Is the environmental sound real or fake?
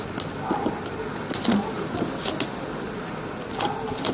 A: real